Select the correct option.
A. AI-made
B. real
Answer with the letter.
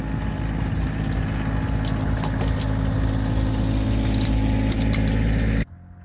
B